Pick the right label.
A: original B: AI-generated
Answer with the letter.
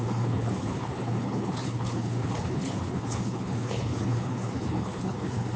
B